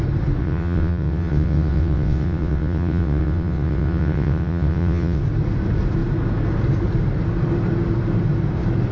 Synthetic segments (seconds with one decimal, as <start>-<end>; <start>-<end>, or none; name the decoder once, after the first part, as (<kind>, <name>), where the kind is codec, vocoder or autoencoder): 0.4-5.2 (vocoder, WaveNeXt)